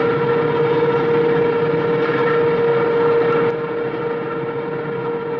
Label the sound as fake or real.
real